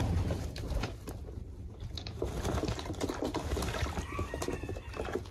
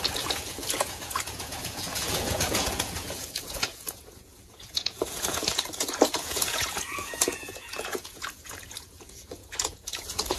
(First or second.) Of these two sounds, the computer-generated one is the second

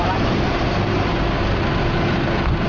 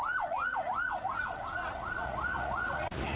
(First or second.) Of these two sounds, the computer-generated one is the second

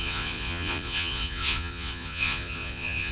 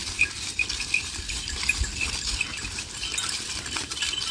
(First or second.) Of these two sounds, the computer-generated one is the first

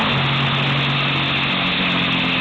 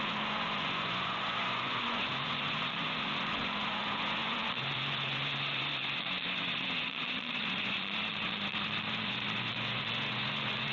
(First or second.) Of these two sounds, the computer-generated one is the second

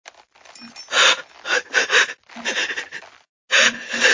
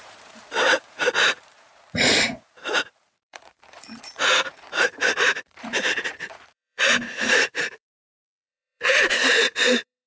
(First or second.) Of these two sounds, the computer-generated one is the second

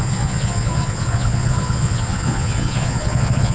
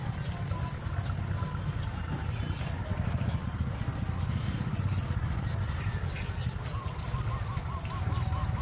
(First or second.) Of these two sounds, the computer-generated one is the first